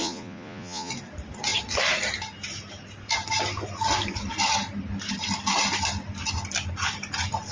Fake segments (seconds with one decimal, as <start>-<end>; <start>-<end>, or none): 0.0-0.9